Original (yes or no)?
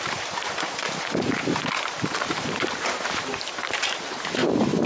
no